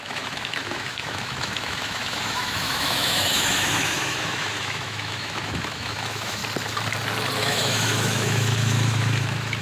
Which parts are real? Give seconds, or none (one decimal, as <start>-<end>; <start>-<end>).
6.4-7.4